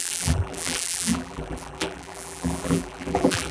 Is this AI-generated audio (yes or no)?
yes